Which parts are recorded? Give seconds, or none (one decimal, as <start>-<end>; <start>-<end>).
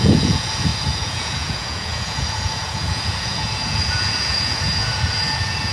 none